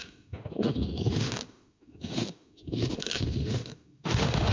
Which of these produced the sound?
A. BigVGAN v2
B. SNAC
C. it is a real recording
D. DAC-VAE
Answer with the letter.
D